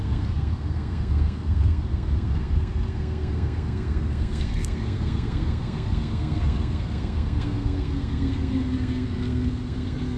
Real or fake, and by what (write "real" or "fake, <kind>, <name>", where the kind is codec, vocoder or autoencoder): fake, codec, SNAC